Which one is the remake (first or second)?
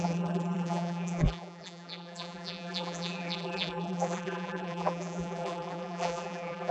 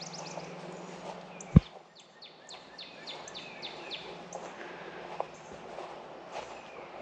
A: first